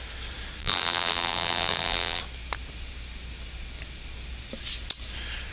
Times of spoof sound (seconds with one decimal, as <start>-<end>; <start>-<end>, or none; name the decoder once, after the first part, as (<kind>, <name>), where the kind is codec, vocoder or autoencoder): 0.6-2.2 (vocoder, BigVGAN v2)